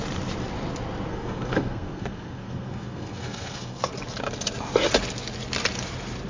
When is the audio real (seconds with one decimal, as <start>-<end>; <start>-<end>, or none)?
0.0-1.1; 3.9-6.3